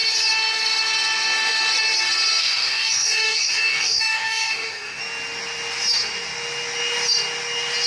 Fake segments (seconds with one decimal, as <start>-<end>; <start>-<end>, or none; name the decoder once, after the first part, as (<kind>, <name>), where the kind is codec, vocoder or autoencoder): 2.4-5.0 (codec, DAC)

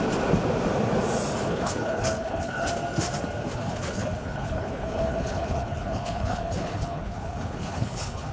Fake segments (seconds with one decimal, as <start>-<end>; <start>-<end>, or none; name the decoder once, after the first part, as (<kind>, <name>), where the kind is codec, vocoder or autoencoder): 1.5-2.7 (codec, HILCodec); 3.5-8.3

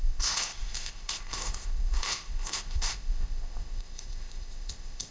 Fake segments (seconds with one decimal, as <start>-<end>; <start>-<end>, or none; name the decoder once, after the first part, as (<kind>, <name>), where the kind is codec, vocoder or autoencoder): 0.0-5.1 (codec, ZipCodec)

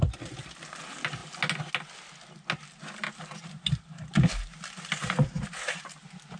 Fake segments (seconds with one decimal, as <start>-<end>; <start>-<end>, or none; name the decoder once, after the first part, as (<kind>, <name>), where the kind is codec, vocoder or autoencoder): none